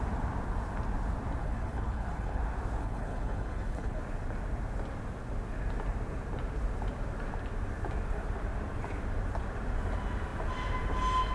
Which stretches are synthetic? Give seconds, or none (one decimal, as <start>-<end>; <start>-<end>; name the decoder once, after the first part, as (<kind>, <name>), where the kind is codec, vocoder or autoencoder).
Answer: 1.4-2.4 (codec, HILCodec); 2.8-4.0